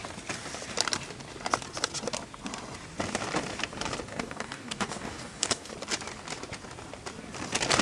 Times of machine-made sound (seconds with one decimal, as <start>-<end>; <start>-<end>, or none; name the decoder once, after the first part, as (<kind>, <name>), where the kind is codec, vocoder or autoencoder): 4.1-5.7 (codec, DAC)